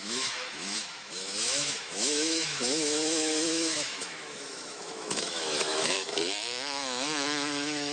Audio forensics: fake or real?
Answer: fake